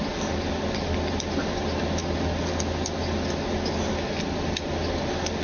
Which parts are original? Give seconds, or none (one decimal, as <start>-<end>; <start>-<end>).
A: 0.0-5.4